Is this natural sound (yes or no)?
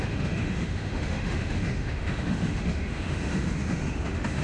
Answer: no